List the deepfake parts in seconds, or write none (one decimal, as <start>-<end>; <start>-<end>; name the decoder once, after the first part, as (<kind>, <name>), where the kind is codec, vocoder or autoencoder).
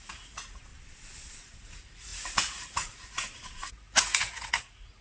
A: 0.0-0.7 (vocoder, Vocos); 1.3-5.0